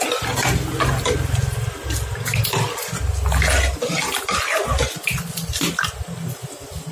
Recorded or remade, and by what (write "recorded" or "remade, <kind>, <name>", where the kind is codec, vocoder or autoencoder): recorded